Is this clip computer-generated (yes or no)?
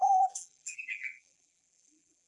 yes